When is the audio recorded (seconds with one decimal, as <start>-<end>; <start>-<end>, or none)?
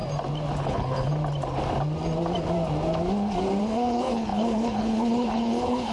0.0-0.6; 1.1-3.6